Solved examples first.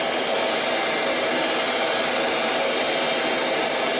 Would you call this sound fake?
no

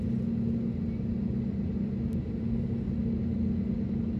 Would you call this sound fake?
no